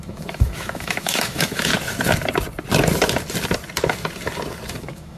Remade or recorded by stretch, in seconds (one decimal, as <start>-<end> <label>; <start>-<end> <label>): 0.0-1.7 remade; 1.7-4.7 recorded; 4.7-5.2 remade